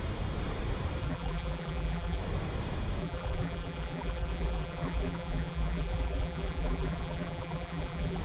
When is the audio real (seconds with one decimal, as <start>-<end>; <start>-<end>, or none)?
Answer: 0.0-1.0; 2.2-3.0